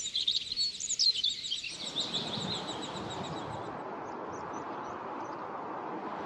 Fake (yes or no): no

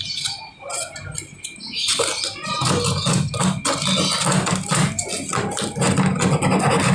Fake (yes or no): no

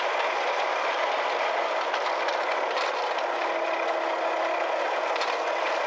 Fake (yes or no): no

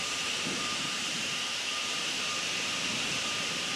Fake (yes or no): yes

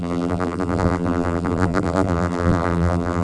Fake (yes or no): yes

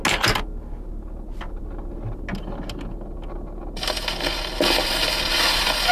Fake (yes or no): no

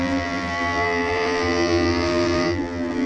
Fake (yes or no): yes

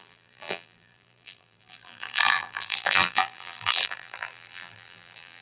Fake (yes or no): yes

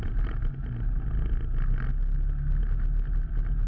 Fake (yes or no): no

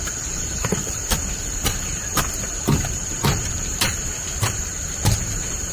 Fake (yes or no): yes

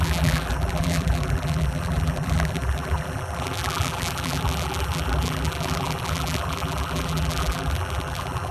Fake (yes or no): yes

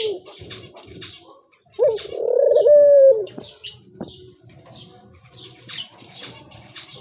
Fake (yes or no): yes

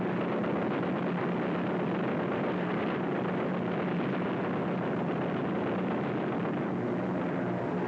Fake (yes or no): no